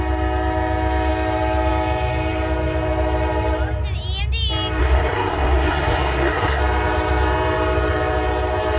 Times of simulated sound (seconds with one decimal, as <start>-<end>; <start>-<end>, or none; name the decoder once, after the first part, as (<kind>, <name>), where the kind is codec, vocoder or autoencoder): 4.8-6.6 (codec, SNAC)